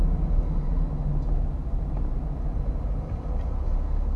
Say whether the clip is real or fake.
real